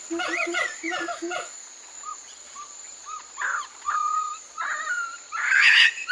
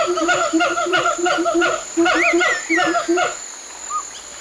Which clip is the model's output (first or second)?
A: first